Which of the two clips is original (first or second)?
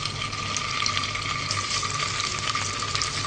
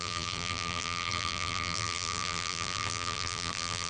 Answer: first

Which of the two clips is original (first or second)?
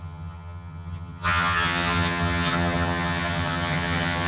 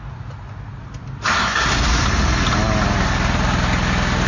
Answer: second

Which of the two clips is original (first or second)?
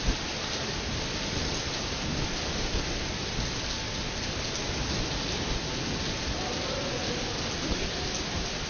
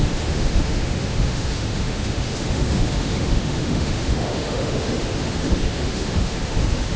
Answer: first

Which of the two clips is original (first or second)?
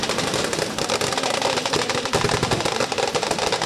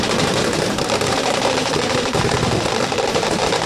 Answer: first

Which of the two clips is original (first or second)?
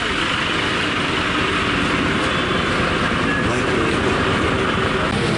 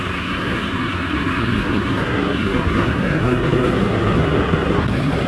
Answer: first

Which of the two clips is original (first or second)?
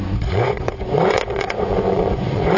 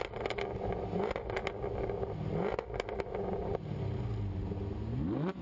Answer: second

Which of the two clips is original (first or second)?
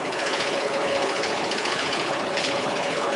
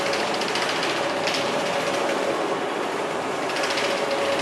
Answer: second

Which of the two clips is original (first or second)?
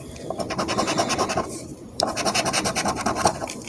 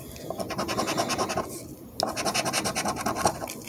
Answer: second